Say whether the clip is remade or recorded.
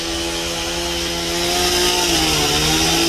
recorded